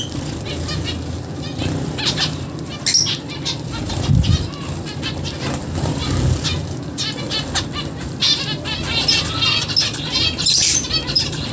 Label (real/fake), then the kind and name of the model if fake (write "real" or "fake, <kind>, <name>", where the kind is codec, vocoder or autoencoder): real